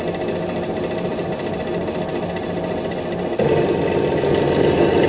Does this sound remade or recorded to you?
recorded